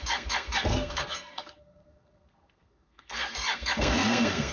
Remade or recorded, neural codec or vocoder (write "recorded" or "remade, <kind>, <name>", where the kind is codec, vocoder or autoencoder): remade, codec, SNAC